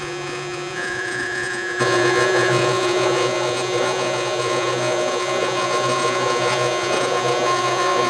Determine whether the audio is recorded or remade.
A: remade